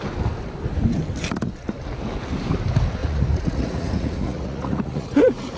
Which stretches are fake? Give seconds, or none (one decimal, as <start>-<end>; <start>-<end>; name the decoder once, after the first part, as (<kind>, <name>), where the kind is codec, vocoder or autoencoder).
3.0-5.6 (vocoder, Vocos)